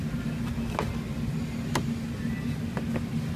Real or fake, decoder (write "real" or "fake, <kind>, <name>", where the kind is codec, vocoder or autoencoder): real